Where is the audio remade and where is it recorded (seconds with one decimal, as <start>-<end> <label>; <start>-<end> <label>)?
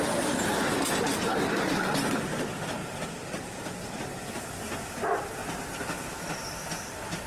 0.0-2.8 recorded; 2.8-5.0 remade; 5.0-5.4 recorded; 5.4-7.3 remade